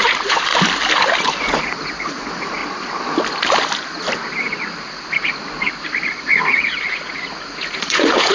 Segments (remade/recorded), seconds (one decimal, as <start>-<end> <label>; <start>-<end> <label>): 0.0-0.5 remade; 0.5-1.3 recorded; 1.3-2.6 remade; 2.6-6.2 recorded; 6.2-8.3 remade